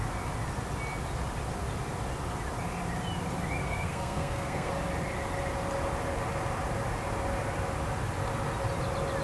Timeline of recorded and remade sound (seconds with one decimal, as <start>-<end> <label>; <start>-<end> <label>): 0.0-3.6 recorded; 3.6-4.7 remade; 4.7-9.2 recorded